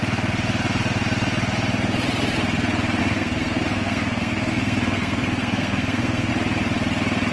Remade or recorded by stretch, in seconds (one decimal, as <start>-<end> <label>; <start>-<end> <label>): 0.0-3.0 recorded; 3.0-6.3 remade; 6.3-7.3 recorded